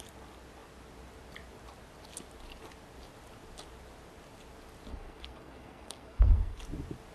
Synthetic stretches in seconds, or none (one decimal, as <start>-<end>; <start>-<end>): 4.9-6.6

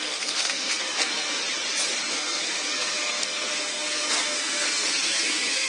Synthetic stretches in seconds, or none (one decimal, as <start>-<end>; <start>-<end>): 0.0-1.4; 2.1-5.7

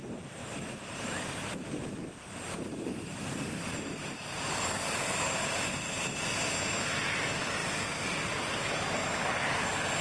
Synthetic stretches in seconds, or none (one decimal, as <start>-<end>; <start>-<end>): 0.4-4.8

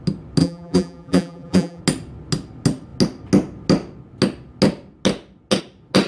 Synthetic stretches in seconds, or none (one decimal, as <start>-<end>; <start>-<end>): 0.4-1.8

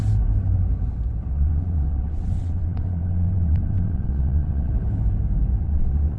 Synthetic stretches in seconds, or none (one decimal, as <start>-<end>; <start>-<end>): 1.3-4.7; 5.6-6.2

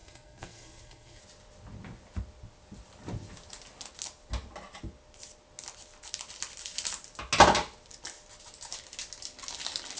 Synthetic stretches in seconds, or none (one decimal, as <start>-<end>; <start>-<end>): 0.0-1.2